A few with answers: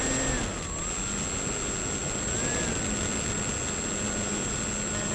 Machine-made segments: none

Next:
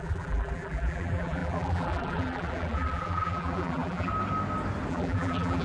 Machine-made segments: 0.0-4.1 (vocoder, BigVGAN v2); 4.9-5.6

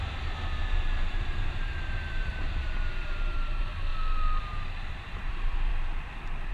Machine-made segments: 0.0-3.9 (vocoder, BigVGAN v2); 4.4-5.7

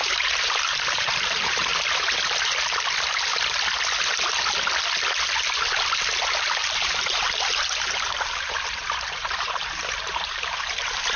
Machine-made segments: 0.0-1.7 (vocoder, BigVGAN v2); 6.6-11.2